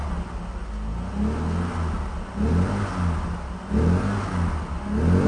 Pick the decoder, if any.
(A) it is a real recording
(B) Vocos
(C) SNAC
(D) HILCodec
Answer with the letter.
A